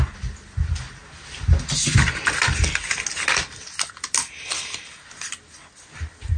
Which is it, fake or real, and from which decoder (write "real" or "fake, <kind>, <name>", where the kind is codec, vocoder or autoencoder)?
real